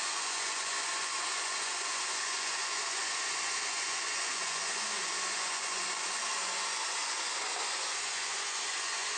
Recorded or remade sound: remade